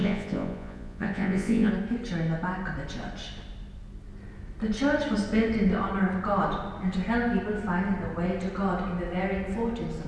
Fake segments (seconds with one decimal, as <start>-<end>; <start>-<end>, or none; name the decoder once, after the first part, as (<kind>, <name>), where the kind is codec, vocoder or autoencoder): 0.0-1.7 (vocoder, Vocos)